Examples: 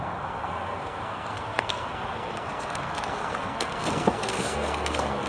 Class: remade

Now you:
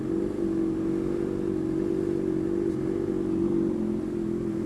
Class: recorded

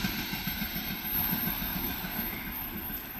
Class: recorded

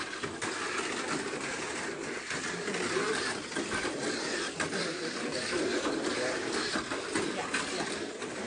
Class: recorded